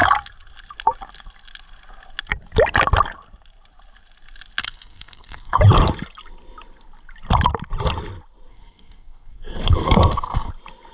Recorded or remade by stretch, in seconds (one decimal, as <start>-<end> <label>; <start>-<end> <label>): 0.0-4.6 recorded; 4.6-5.6 remade; 5.6-8.5 recorded; 8.5-10.5 remade; 10.5-10.9 recorded